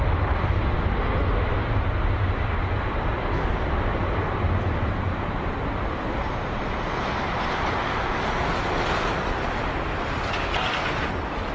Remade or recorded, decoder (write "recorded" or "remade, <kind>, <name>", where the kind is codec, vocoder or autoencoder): recorded